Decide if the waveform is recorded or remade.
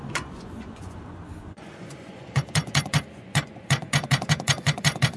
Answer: remade